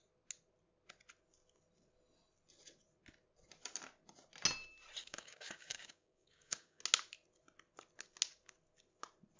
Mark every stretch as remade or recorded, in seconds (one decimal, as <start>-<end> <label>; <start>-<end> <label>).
0.0-5.0 recorded; 5.0-6.8 remade; 6.8-9.4 recorded

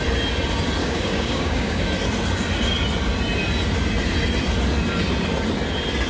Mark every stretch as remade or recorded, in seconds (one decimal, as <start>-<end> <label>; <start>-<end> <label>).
0.0-0.8 recorded; 0.8-1.8 remade; 1.8-6.1 recorded

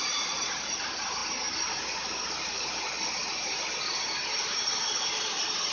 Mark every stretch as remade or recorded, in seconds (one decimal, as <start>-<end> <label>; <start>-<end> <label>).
0.0-5.7 recorded